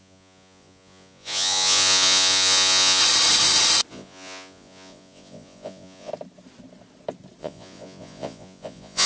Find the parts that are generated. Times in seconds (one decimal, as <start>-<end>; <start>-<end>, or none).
0.0-3.0; 3.9-6.1; 7.4-9.1